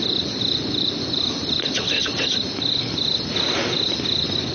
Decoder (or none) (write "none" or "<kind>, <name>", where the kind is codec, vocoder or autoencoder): none